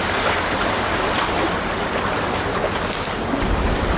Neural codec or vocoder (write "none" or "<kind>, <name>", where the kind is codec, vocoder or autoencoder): none